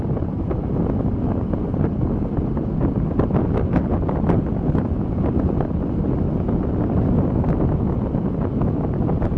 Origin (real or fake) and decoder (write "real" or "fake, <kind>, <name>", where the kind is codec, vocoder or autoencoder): real